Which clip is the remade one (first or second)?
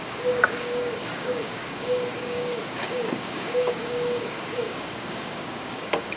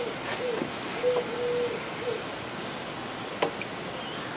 first